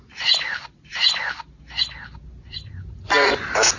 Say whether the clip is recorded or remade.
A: recorded